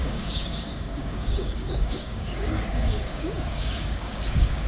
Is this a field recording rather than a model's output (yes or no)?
no